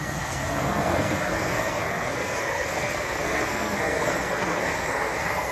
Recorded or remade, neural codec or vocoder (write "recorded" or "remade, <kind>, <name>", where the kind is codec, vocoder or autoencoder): remade, codec, SNAC